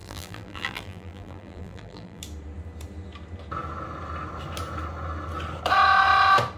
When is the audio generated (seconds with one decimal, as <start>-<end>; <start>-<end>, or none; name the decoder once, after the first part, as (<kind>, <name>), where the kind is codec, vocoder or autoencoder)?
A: 0.0-2.2 (vocoder, BigVGAN v2)